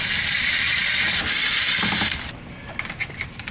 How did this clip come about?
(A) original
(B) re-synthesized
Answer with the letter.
A